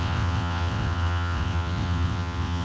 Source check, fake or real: fake